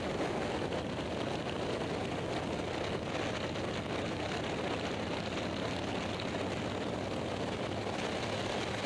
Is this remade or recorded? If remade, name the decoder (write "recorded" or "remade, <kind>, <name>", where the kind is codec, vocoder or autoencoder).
recorded